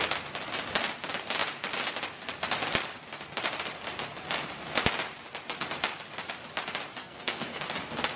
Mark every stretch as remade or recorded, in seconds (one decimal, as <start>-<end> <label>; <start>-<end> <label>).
0.0-7.0 recorded; 7.0-7.6 remade; 7.6-8.2 recorded